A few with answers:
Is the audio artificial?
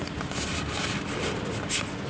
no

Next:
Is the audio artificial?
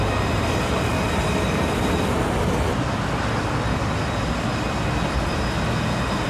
no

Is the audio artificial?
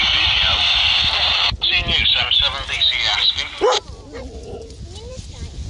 no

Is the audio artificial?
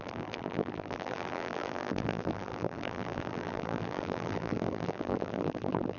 yes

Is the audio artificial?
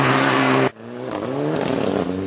no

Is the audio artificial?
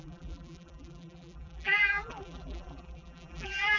yes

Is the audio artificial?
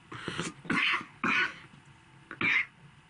no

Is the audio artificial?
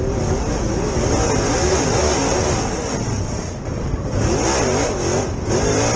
no